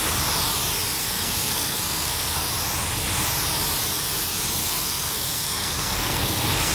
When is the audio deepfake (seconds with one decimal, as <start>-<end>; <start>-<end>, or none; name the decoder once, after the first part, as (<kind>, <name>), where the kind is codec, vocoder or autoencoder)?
1.0-2.5 (codec, SNAC); 4.6-6.7